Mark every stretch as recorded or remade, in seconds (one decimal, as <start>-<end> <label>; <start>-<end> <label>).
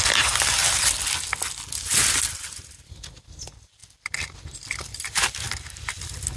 0.0-6.4 recorded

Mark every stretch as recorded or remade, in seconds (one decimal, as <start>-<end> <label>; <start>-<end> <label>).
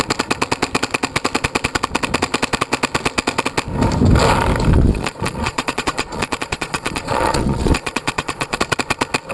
0.0-4.7 recorded; 4.7-8.6 remade; 8.6-9.3 recorded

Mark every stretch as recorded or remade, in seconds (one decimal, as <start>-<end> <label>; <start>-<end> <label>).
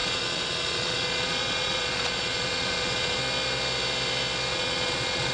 0.0-3.2 remade; 3.2-4.5 recorded; 4.5-5.3 remade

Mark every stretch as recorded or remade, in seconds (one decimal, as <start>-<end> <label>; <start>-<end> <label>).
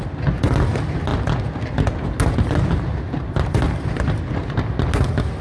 0.0-5.4 recorded